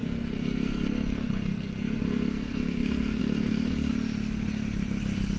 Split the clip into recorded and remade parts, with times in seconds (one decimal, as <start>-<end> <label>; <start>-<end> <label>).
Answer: 0.0-3.9 remade; 3.9-5.4 recorded